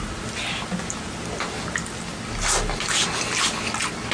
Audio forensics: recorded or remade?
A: recorded